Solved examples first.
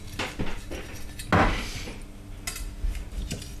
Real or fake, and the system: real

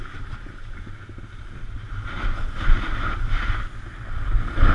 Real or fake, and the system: real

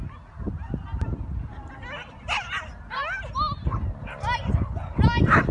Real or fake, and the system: real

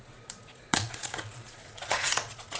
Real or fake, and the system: fake, vocoder, Vocos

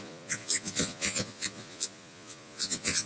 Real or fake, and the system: fake, vocoder, Vocos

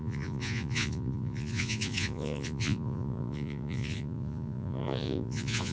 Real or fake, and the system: fake, vocoder, Vocos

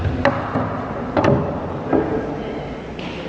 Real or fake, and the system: real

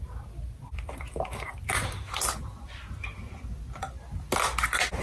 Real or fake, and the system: real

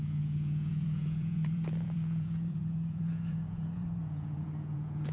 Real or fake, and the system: fake, vocoder, Vocos